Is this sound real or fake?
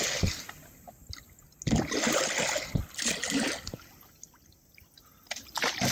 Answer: real